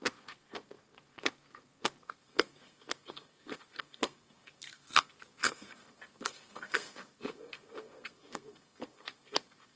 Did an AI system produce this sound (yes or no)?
yes